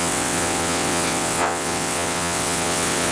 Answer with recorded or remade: remade